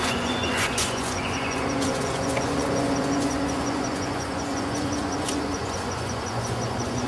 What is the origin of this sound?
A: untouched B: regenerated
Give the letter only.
B